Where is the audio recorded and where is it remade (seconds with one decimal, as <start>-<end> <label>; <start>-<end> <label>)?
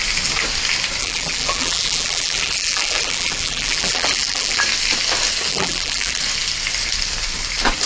0.0-1.0 recorded; 1.0-4.6 remade; 4.6-5.5 recorded; 5.5-6.2 remade; 6.2-7.9 recorded